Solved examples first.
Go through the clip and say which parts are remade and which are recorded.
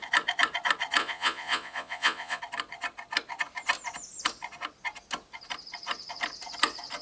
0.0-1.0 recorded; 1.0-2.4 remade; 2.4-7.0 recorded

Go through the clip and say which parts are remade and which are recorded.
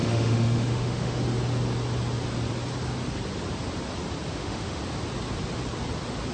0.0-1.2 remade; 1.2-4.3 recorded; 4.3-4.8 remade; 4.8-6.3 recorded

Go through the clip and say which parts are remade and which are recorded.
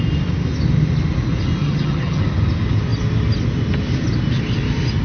0.0-1.6 recorded; 1.6-2.2 remade; 2.2-5.0 recorded